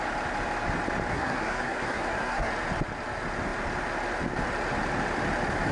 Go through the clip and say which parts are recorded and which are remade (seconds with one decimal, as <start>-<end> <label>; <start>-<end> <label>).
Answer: 0.0-1.1 recorded; 1.1-2.5 remade; 2.5-5.7 recorded